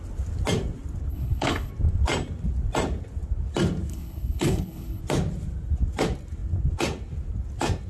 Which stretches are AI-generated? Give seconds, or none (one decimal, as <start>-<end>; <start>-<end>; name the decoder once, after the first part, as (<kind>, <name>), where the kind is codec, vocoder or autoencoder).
1.1-1.7 (codec, HILCodec); 3.9-5.0